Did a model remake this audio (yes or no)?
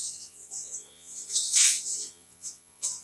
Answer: yes